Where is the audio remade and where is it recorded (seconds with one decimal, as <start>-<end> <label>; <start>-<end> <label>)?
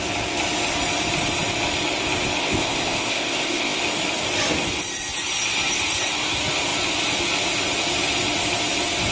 0.0-2.4 recorded; 2.4-3.8 remade; 3.8-9.1 recorded